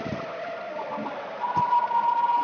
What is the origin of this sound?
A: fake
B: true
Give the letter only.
B